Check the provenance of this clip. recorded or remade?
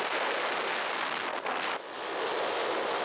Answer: recorded